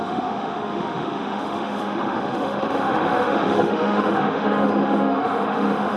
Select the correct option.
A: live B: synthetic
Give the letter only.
B